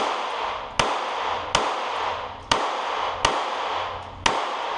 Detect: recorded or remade recorded